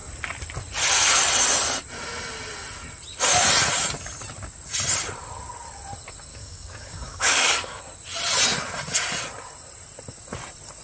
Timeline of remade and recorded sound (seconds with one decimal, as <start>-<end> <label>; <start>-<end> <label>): 0.0-6.3 recorded; 6.3-7.8 remade; 7.8-10.8 recorded

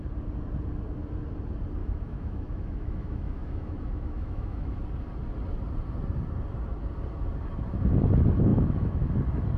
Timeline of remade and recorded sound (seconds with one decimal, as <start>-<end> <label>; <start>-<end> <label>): 0.0-1.8 recorded; 1.8-4.8 remade; 4.8-8.5 recorded; 8.5-9.1 remade; 9.1-9.6 recorded

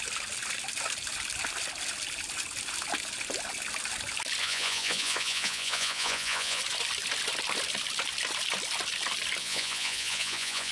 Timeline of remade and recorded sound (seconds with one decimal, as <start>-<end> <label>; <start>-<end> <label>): 0.0-4.4 recorded; 4.4-6.6 remade; 6.6-9.4 recorded; 9.4-10.7 remade

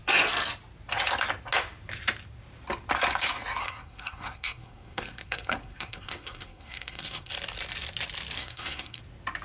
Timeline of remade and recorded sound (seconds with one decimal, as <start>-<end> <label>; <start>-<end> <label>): 0.0-3.6 recorded; 3.6-7.3 remade; 7.3-8.4 recorded; 8.4-9.0 remade; 9.0-9.4 recorded